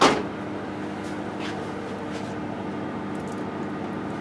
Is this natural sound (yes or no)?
yes